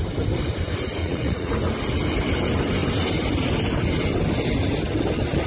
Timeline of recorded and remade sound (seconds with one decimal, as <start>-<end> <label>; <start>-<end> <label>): 0.0-1.0 recorded; 1.0-1.5 remade; 1.5-5.5 recorded